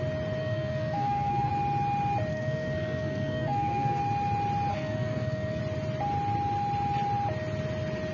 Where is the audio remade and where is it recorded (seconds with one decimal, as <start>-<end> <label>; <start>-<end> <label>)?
0.0-0.4 recorded; 0.4-1.5 remade; 1.5-2.3 recorded; 2.3-4.0 remade; 4.0-4.7 recorded; 4.7-5.6 remade; 5.6-8.1 recorded